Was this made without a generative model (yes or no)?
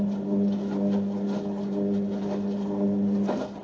yes